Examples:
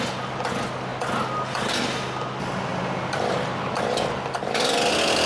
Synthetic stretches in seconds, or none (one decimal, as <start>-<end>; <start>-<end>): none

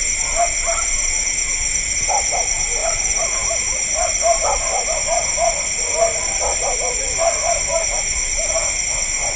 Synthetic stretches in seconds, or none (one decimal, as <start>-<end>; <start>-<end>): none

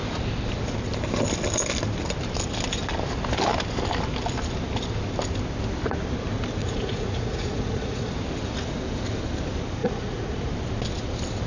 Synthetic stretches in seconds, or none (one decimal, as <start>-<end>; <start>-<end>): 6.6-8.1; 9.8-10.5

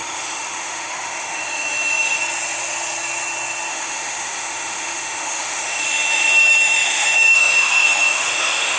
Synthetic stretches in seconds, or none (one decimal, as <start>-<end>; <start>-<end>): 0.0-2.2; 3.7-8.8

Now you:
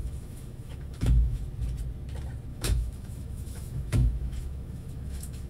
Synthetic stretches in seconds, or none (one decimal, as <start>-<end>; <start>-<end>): 0.0-1.4; 2.5-5.5